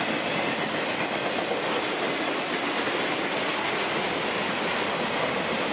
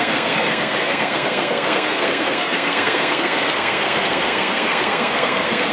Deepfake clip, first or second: second